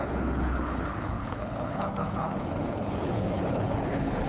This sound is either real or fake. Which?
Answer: fake